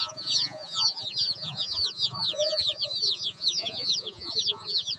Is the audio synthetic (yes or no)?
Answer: yes